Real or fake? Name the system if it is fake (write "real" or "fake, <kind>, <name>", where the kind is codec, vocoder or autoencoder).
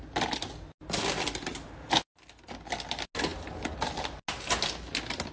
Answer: real